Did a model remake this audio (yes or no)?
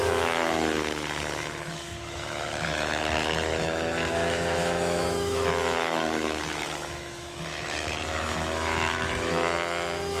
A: yes